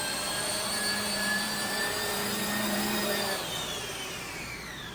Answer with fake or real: fake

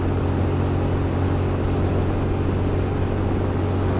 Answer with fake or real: real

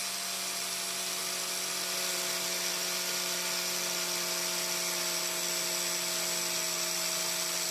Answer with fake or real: real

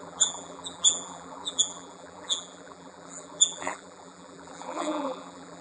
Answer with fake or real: fake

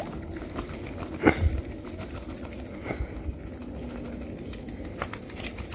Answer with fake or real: real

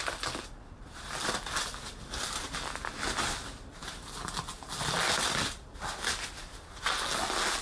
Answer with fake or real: real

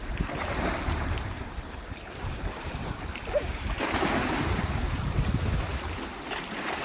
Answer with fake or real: fake